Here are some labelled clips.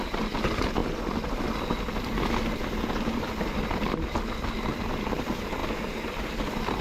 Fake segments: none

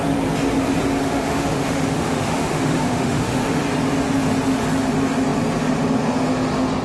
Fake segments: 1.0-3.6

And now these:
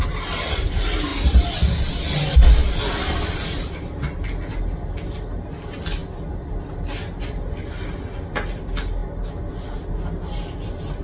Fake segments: none

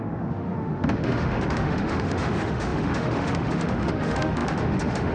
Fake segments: 0.0-5.1

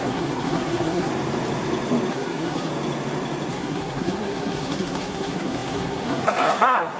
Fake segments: 0.0-1.1; 2.1-2.7; 3.5-7.0